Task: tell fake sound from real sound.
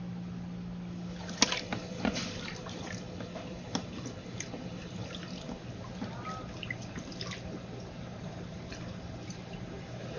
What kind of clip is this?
real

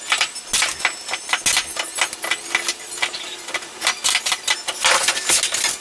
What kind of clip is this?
real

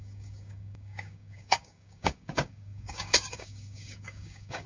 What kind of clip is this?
fake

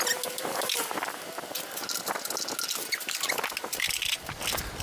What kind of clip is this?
real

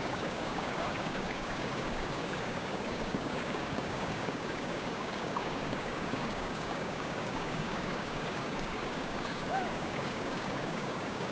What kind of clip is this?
fake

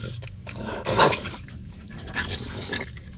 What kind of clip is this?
fake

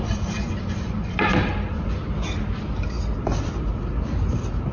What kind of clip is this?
real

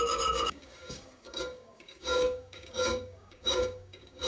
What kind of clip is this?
fake